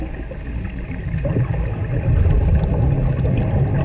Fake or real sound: real